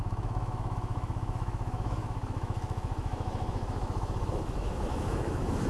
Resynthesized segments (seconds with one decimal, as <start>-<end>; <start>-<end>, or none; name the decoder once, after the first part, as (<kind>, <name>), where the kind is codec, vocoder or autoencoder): 0.0-5.7 (autoencoder, DAC-VAE)